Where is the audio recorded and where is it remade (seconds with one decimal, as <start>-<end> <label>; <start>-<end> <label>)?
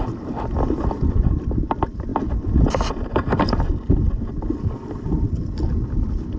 0.0-1.0 recorded; 1.0-2.1 remade; 2.1-3.9 recorded; 3.9-6.4 remade